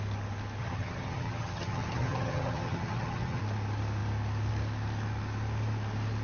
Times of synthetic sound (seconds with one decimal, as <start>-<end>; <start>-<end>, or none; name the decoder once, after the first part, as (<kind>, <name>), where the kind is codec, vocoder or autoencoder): 0.6-3.4 (vocoder, HiFi-GAN)